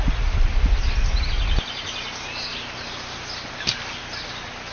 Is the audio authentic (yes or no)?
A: yes